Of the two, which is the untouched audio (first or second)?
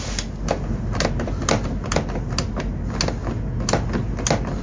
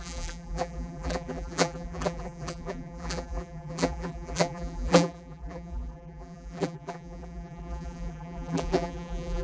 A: first